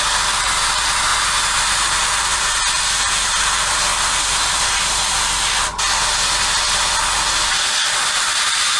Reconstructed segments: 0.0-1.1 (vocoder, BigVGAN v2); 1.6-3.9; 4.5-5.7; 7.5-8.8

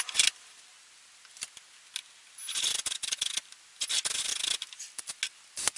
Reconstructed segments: none

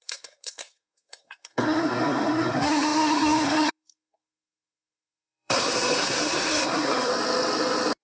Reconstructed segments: 0.0-7.1 (codec, SNAC)

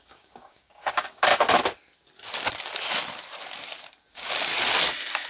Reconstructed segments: 0.0-1.3 (codec, DAC); 4.1-4.5

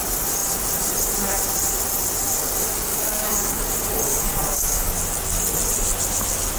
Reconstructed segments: 2.9-3.6 (codec, DAC); 4.1-4.9

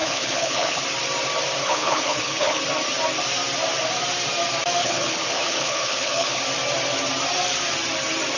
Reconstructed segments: 0.0-0.8 (codec, HILCodec); 1.6-2.6; 4.8-6.4